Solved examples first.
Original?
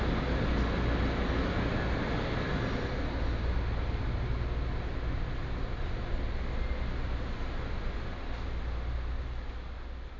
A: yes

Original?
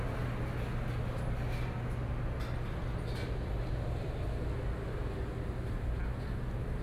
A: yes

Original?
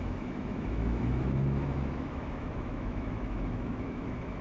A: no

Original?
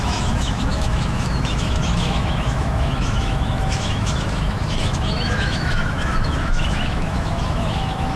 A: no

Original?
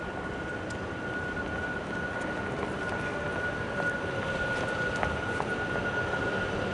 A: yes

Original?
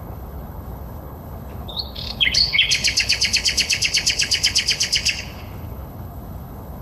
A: no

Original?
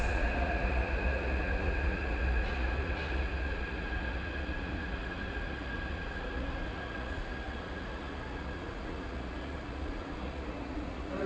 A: no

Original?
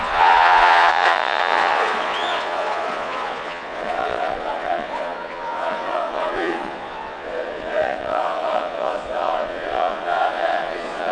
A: no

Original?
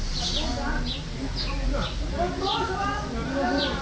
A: yes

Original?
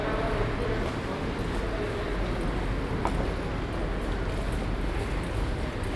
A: yes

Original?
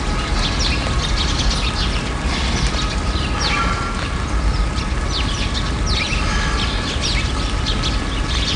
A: yes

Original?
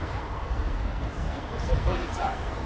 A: no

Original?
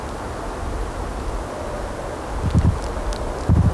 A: yes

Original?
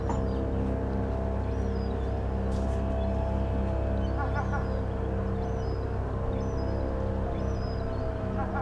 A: yes